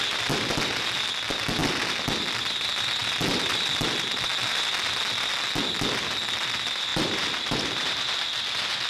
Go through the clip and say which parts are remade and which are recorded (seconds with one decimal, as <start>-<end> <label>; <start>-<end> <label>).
0.0-6.9 recorded; 6.9-8.2 remade; 8.2-8.9 recorded

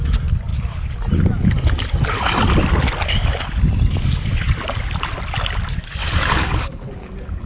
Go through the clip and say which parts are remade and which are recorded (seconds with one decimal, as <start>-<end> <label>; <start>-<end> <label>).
0.0-6.0 recorded; 6.0-7.1 remade; 7.1-7.5 recorded

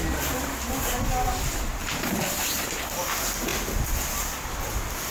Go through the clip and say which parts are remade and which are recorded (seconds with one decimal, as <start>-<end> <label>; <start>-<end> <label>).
0.0-5.1 recorded